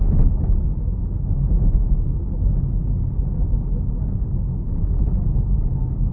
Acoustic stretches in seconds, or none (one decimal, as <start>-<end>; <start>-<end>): 0.0-6.1